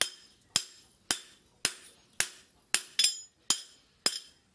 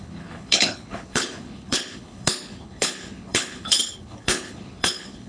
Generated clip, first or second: second